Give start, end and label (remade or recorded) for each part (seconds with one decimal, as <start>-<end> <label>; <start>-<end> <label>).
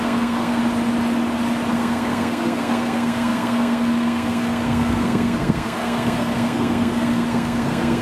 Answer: 0.0-0.6 remade; 0.6-1.7 recorded; 1.7-8.0 remade